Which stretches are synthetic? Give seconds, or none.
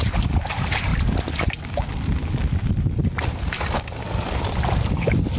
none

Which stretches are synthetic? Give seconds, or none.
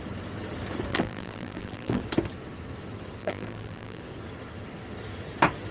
0.9-2.0 (vocoder, BigVGAN v2); 3.2-4.0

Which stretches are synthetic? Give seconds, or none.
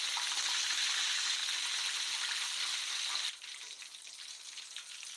1.4-3.8 (vocoder, BigVGAN v2)